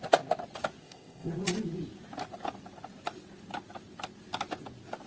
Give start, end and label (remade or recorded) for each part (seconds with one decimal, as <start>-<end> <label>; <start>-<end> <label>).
0.0-0.8 recorded; 0.8-1.3 remade; 1.3-5.1 recorded